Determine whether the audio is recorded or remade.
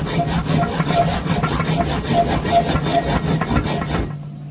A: recorded